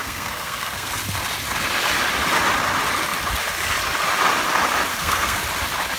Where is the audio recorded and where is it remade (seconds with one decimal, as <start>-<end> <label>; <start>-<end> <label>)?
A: 0.0-0.9 remade; 0.9-4.9 recorded; 4.9-5.4 remade; 5.4-6.0 recorded